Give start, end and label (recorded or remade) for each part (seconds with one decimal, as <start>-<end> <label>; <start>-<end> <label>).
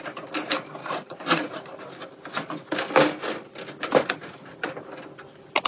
0.0-0.8 recorded; 0.8-1.5 remade; 1.5-4.0 recorded; 4.0-4.7 remade; 4.7-5.7 recorded